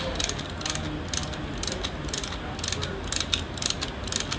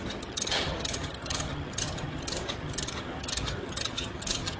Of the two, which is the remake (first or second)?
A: second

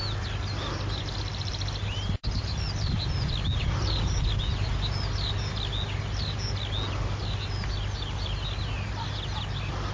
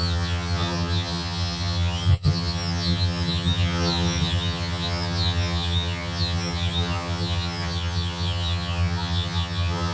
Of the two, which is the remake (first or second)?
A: second